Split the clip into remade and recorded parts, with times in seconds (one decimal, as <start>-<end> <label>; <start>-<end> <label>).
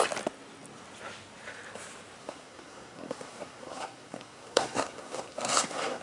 0.0-2.2 recorded; 2.2-6.0 remade